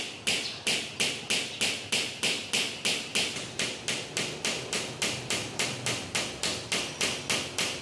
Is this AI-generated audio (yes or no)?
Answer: no